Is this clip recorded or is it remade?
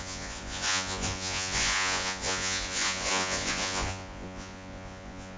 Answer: remade